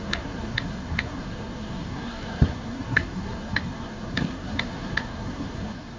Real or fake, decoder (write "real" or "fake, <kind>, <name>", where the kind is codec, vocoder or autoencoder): fake, codec, SNAC